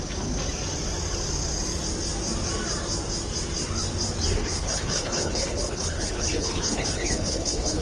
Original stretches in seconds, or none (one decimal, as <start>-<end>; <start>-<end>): 0.0-4.4